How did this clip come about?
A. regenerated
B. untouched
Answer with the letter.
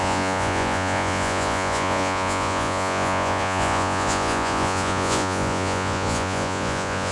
A